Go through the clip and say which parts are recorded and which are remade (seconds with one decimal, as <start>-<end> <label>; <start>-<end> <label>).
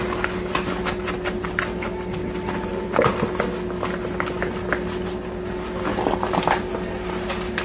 0.0-7.6 recorded